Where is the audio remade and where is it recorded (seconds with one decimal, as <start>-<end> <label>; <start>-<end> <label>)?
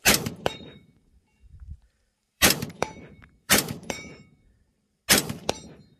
0.0-5.0 remade; 5.0-6.0 recorded